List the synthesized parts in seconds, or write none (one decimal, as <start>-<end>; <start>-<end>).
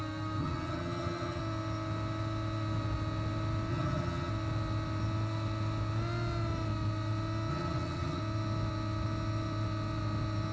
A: 0.4-1.4; 3.7-4.3; 7.5-8.2